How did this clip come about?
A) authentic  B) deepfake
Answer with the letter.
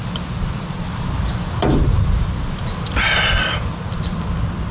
A